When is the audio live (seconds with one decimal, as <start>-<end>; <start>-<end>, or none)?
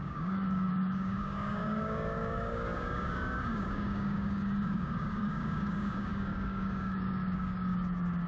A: none